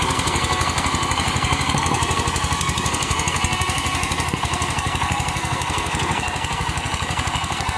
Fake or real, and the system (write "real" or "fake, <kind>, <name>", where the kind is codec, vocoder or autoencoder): fake, codec, SNAC